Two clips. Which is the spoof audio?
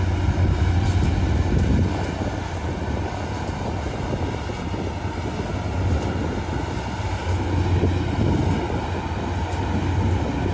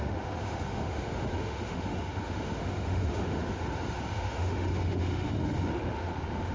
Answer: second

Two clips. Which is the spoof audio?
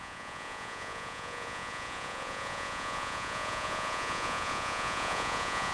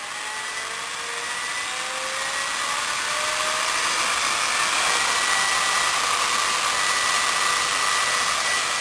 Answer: first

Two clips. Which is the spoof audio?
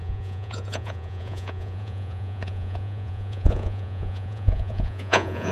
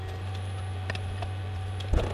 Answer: first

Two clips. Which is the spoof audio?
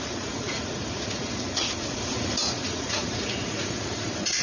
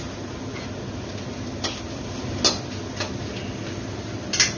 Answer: first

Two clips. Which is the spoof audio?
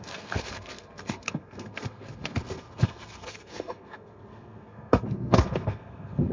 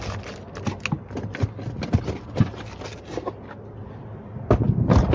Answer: first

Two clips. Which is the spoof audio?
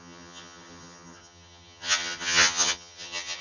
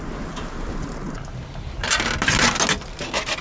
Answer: first